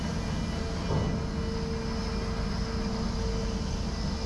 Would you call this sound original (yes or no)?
yes